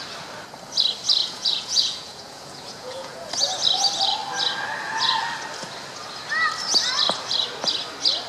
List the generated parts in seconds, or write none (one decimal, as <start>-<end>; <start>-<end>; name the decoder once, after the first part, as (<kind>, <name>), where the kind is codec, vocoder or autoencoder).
1.2-3.3 (vocoder, Vocos)